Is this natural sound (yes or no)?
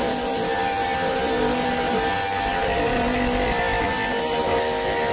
yes